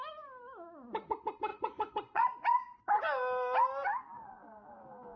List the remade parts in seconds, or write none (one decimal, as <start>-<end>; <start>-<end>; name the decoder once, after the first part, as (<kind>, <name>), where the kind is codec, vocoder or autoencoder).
1.5-2.8 (vocoder, Vocos)